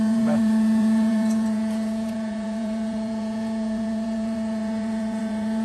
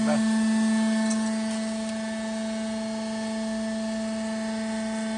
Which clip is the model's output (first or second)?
first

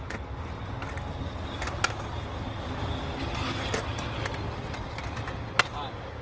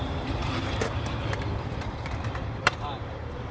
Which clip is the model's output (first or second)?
second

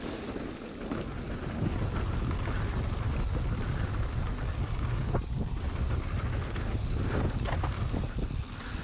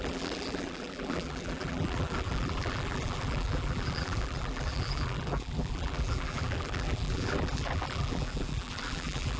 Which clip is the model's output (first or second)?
second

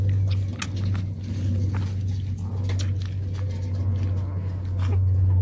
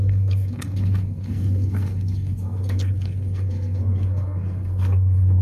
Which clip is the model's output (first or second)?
second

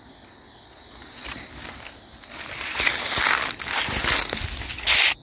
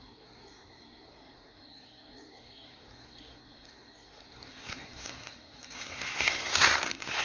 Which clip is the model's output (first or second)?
second